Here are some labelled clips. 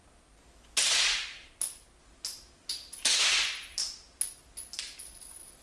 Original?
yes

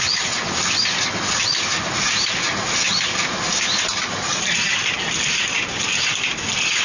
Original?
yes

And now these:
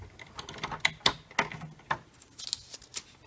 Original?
yes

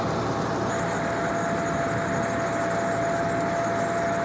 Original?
yes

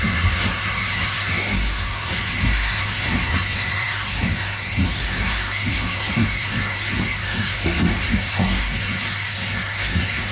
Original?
no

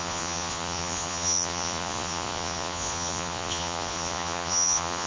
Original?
no